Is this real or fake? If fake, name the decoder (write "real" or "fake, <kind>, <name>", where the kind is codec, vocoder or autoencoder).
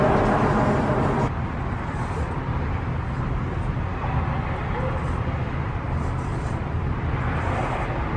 real